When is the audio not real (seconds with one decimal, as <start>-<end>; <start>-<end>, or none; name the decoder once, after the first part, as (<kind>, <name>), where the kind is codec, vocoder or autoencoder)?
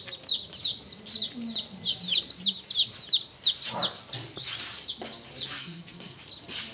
5.6-6.2 (codec, SNAC)